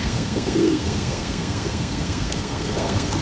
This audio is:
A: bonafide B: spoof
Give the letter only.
B